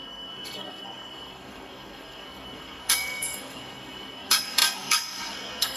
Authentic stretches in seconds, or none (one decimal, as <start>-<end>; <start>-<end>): none